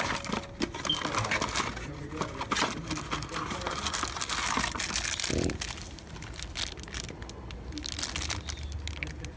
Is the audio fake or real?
real